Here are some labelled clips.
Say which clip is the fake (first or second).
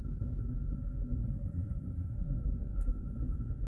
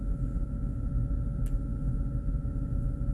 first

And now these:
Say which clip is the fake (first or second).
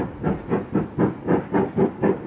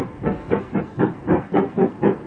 second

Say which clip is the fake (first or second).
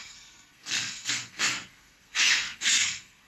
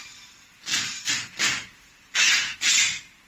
first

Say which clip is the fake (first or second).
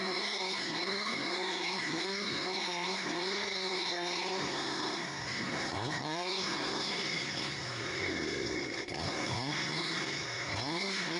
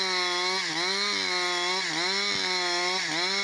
first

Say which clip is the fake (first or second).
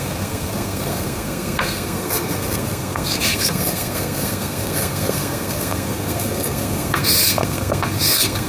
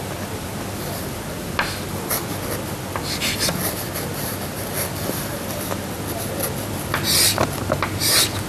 first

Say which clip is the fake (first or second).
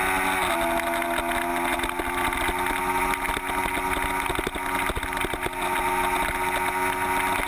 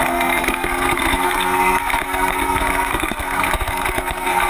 second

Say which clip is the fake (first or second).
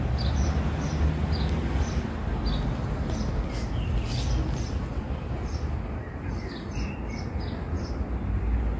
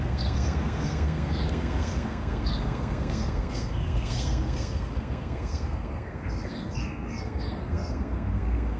second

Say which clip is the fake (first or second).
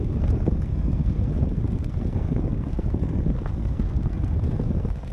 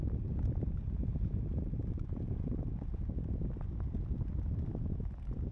first